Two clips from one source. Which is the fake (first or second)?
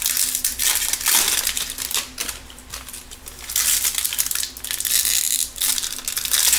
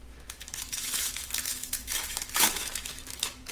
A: second